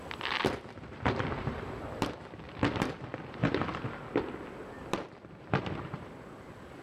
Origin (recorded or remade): remade